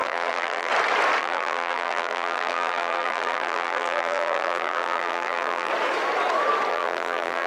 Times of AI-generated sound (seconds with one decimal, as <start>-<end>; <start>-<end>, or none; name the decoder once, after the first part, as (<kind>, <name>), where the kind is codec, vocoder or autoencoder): 0.0-0.7 (vocoder, BigVGAN v2); 1.2-5.7; 6.7-7.5